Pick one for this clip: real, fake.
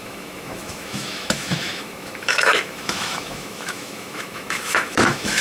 fake